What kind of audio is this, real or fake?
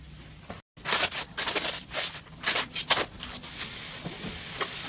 real